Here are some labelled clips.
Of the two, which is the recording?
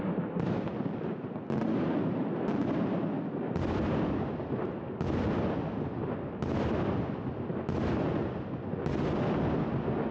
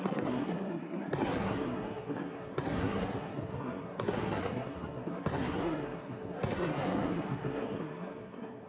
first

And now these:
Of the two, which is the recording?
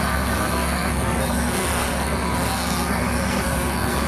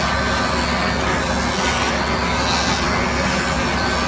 second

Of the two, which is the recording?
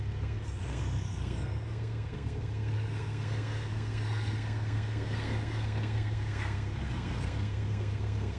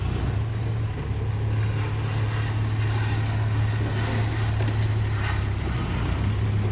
second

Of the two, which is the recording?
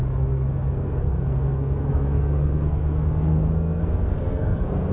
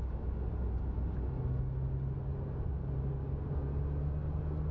second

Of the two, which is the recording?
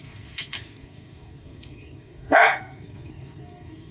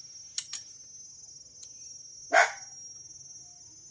second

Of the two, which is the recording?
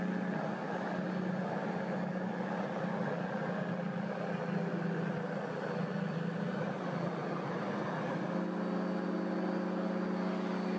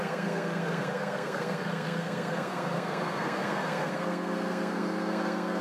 first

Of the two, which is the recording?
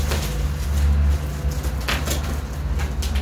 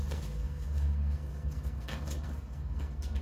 first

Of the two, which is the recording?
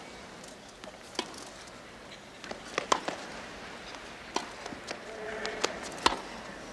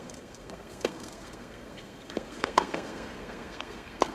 first